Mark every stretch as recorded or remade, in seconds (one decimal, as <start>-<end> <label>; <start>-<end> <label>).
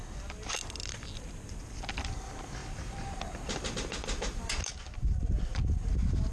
0.0-2.6 recorded; 2.6-3.2 remade; 3.2-6.3 recorded